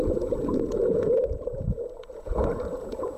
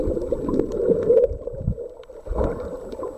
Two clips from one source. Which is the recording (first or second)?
second